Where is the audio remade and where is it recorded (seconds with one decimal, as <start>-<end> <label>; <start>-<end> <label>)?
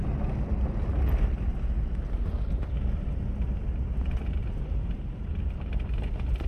0.0-4.4 recorded; 4.4-5.4 remade; 5.4-6.5 recorded